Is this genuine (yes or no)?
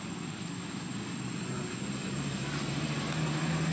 yes